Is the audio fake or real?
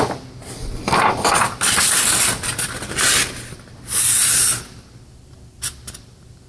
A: real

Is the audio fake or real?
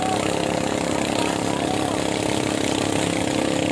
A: real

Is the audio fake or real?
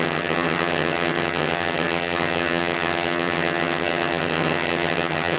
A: fake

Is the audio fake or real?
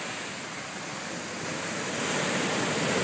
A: real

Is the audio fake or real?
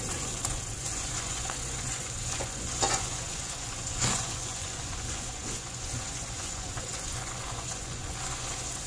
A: fake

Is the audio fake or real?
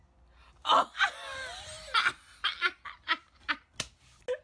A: real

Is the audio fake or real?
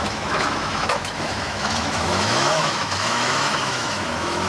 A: fake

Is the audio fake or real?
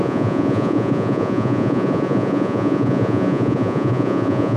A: fake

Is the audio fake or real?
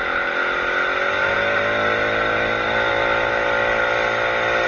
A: real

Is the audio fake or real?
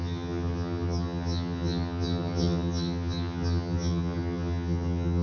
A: fake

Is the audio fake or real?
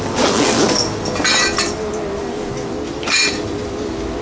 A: real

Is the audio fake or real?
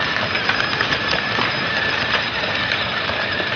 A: fake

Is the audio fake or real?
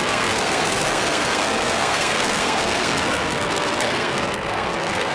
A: fake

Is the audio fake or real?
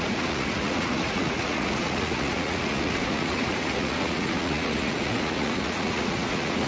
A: fake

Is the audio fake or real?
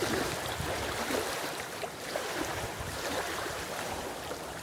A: fake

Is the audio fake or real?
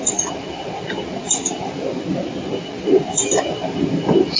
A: real